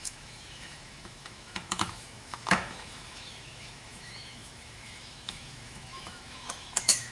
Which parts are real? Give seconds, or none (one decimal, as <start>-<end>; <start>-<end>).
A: none